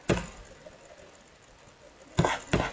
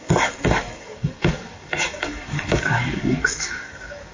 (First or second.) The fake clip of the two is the second